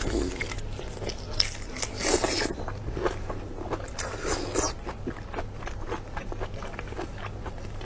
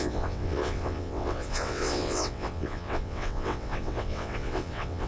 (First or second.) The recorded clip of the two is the first